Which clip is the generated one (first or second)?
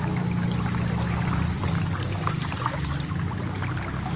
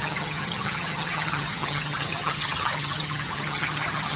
second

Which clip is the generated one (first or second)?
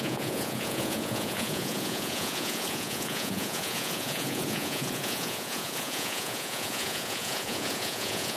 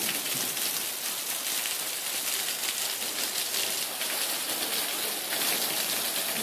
first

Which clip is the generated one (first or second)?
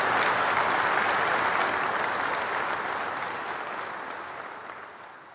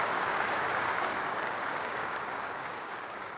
second